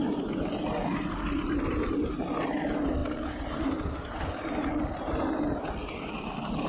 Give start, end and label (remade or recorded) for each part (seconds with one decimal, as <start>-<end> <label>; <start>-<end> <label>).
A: 0.0-6.7 recorded